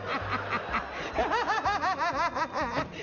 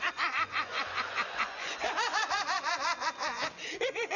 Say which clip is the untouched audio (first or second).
first